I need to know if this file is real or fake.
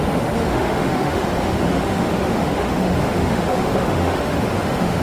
fake